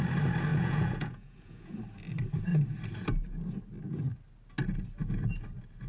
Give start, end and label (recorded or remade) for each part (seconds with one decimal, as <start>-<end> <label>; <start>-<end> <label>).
0.0-0.5 recorded; 0.5-1.8 remade; 1.8-5.9 recorded

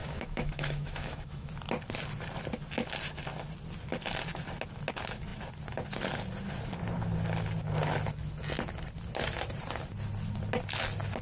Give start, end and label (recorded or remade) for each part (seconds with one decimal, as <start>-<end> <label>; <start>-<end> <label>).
0.0-1.5 remade; 1.5-11.2 recorded

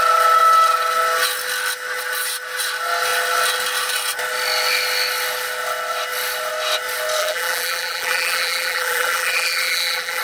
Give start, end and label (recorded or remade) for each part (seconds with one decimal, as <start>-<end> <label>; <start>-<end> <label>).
0.0-7.2 recorded; 7.2-10.2 remade

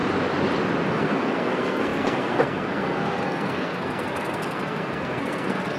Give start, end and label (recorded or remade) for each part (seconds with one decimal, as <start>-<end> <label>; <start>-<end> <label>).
0.0-0.9 recorded; 0.9-5.8 remade

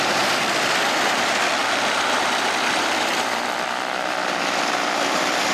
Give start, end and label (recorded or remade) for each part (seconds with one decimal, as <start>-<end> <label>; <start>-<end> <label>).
0.0-1.6 recorded; 1.6-4.4 remade; 4.4-5.5 recorded

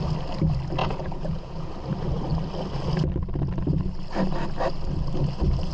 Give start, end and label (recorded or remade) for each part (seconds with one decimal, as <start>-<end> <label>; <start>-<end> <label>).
0.0-0.8 recorded; 0.8-1.7 remade; 1.7-5.7 recorded

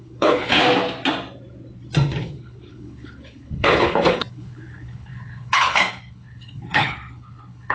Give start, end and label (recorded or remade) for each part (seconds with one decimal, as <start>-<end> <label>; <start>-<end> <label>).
0.0-0.6 remade; 0.6-2.2 recorded; 2.2-7.7 remade

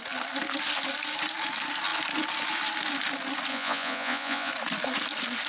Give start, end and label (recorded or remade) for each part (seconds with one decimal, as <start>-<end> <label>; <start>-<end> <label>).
0.0-3.5 recorded; 3.5-4.5 remade; 4.5-5.5 recorded